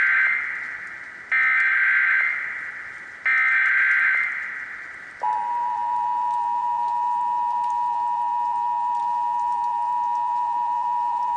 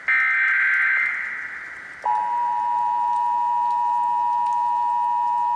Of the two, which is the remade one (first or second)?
first